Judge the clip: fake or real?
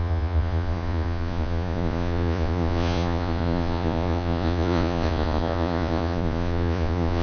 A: fake